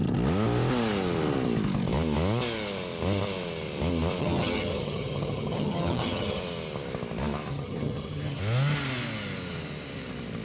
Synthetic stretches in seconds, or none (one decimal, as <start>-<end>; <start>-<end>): 4.2-6.4; 7.5-8.4

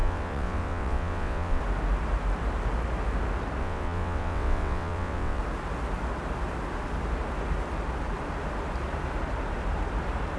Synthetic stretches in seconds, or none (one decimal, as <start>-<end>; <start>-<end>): 0.0-1.6; 3.6-5.4